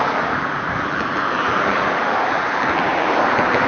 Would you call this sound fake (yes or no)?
yes